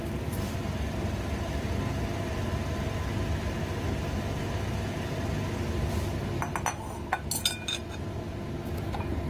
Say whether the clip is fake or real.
real